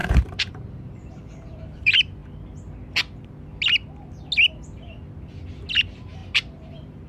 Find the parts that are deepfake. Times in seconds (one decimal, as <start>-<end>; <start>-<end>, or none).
0.0-2.2; 5.8-7.1